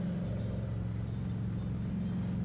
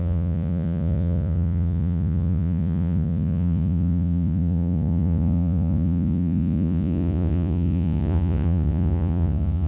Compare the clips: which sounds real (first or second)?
first